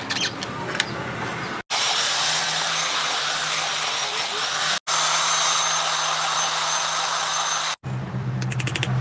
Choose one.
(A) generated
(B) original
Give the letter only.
B